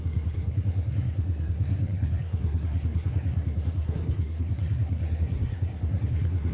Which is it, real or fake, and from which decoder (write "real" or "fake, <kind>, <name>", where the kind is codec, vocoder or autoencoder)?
fake, codec, SNAC